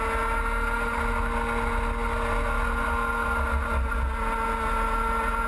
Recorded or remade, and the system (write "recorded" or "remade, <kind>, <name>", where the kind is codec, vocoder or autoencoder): recorded